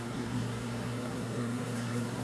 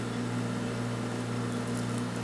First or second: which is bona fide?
second